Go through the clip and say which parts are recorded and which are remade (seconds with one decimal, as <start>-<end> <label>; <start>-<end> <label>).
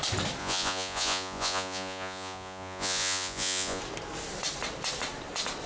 0.0-0.4 recorded; 0.4-3.8 remade; 3.8-5.7 recorded